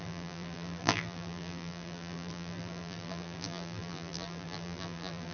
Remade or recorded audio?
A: remade